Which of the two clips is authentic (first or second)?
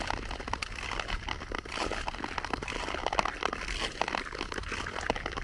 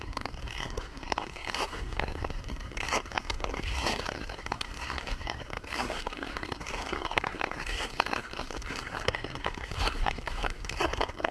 first